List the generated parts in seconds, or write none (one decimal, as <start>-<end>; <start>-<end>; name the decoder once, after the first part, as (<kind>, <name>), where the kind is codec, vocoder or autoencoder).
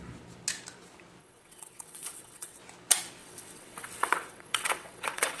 1.2-2.6 (vocoder, WaveNeXt); 3.2-5.4